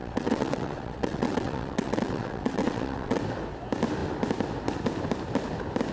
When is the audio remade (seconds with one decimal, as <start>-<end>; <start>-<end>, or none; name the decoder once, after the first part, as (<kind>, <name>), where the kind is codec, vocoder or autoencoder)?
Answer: 0.0-3.2 (vocoder, WaveNeXt)